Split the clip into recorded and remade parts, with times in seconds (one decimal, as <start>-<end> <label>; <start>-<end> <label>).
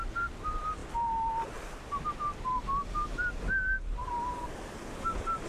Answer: 0.0-5.5 recorded